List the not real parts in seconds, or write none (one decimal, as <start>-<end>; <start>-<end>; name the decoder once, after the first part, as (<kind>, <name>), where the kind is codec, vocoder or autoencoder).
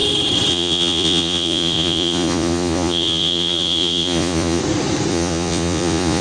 0.5-4.6 (vocoder, Vocos); 5.1-6.2